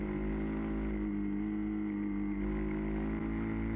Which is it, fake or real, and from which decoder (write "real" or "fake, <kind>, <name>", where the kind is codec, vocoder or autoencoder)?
real